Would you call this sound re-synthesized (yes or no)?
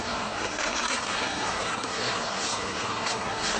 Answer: yes